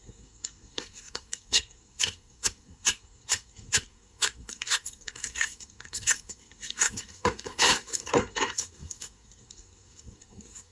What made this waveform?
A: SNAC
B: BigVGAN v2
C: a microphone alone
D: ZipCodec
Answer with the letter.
A